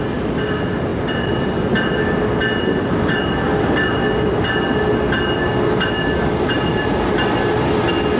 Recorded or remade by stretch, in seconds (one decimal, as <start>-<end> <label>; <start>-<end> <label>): 0.0-8.2 recorded